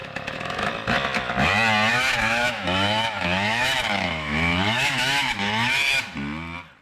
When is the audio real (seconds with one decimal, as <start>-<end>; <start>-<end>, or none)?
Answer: 0.7-1.9; 6.0-6.8